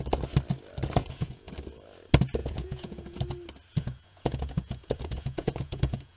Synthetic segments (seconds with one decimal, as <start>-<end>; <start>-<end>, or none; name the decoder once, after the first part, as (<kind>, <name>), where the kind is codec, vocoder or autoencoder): 1.0-1.5 (vocoder, Vocos); 2.4-3.2; 3.7-6.2